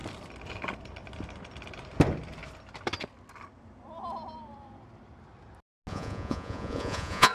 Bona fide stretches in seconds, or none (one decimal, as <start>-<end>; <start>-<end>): 0.0-5.9